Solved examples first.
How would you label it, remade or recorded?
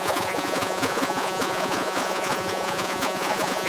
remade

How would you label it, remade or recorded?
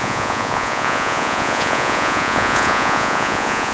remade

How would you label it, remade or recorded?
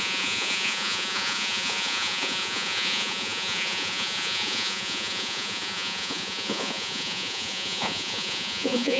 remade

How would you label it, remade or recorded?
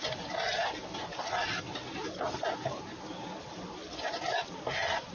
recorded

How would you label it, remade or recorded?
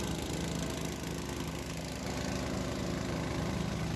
recorded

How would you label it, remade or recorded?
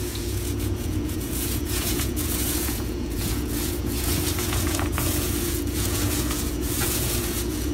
remade